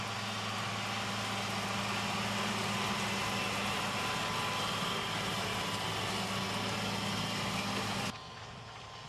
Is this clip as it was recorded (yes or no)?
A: yes